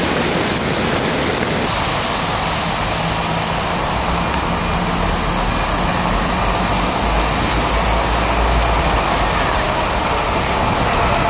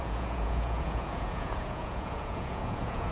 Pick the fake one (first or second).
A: second